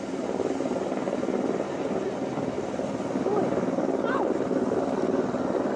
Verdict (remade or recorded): recorded